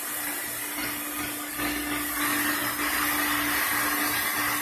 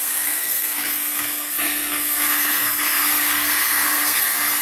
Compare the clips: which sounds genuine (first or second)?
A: first